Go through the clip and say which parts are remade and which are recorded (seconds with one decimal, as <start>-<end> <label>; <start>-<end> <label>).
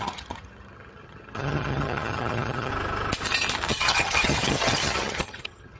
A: 0.0-2.7 remade; 2.7-3.7 recorded; 3.7-5.8 remade